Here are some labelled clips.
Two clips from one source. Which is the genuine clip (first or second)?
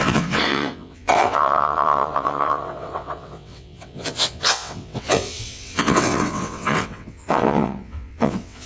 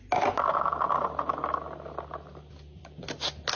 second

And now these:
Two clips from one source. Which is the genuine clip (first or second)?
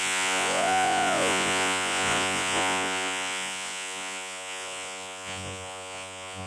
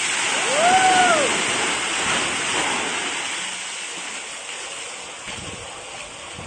second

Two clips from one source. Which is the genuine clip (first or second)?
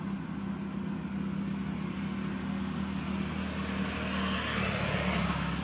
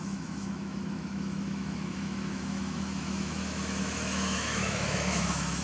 first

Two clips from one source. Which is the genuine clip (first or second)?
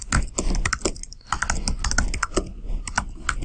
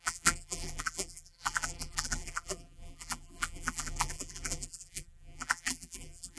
first